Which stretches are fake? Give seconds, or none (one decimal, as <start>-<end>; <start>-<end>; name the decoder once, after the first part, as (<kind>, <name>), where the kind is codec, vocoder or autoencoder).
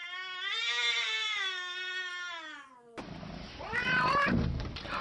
none